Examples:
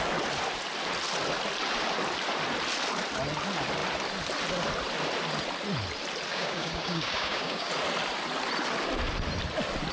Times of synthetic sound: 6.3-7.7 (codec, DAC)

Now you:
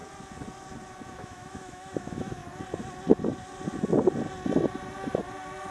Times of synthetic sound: 1.1-2.4 (autoencoder, DAC-VAE)

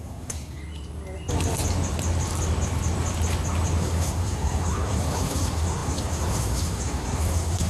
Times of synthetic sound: 0.0-0.6 (codec, SNAC); 3.8-7.7